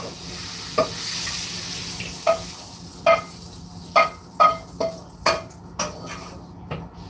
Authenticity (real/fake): real